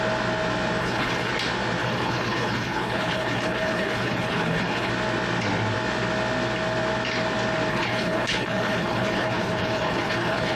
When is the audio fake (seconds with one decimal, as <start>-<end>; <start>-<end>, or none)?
0.8-1.3; 1.8-4.9; 7.7-10.6